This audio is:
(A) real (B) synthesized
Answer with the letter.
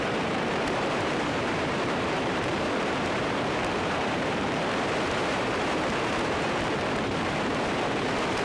B